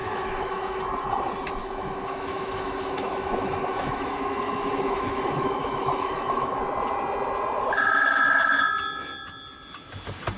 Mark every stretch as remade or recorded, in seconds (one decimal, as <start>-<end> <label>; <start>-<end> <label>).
0.0-0.8 remade; 0.8-1.6 recorded; 1.6-6.6 remade; 6.6-10.4 recorded